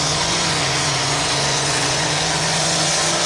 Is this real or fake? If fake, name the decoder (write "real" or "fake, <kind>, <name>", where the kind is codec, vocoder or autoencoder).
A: fake, vocoder, Vocos